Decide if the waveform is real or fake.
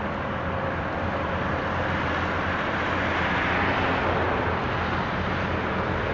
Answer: real